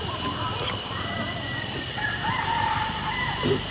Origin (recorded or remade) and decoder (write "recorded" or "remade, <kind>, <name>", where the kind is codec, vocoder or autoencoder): recorded